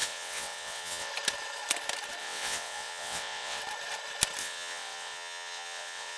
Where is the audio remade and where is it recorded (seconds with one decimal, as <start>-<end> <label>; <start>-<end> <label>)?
0.0-1.1 remade; 1.1-2.2 recorded; 2.2-3.6 remade; 3.6-4.4 recorded; 4.4-6.2 remade